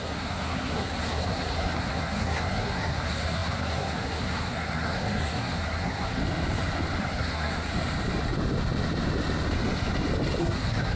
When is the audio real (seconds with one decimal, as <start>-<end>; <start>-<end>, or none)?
6.2-7.0; 7.7-10.4